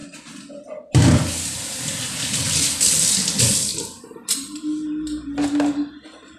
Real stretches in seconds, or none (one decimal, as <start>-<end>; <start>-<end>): 0.0-6.4